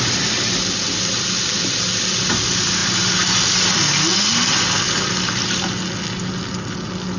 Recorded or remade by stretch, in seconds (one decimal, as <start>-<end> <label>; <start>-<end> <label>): 0.0-7.2 recorded